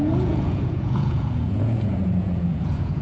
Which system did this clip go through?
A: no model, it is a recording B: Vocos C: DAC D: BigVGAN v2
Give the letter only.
B